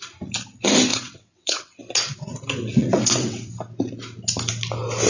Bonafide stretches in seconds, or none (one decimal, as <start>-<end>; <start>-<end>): 0.0-0.9; 1.8-2.8; 3.5-5.1